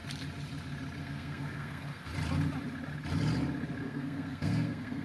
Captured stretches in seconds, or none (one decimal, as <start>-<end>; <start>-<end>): 0.0-1.0; 2.1-3.8